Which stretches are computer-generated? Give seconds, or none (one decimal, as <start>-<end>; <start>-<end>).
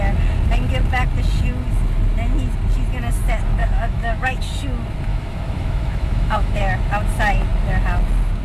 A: 3.6-4.4; 5.1-6.6